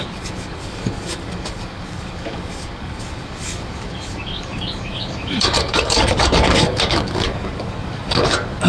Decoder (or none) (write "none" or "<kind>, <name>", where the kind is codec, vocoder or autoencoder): codec, DAC